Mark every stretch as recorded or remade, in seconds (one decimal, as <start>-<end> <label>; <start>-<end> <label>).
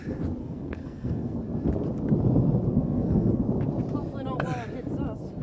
0.0-0.4 recorded; 0.4-1.4 remade; 1.4-2.7 recorded; 2.7-3.4 remade; 3.4-5.4 recorded